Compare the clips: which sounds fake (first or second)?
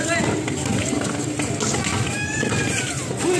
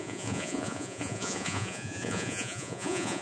second